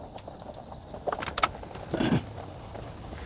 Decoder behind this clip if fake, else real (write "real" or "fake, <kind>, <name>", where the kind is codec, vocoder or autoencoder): real